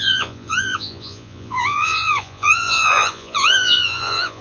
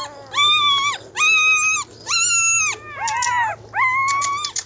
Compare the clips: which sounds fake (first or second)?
first